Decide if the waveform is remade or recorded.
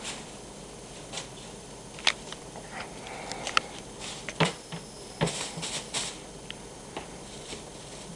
remade